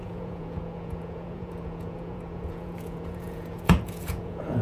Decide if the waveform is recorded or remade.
remade